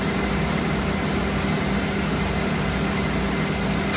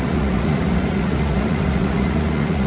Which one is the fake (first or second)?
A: second